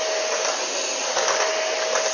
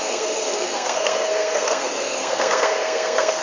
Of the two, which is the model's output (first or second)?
second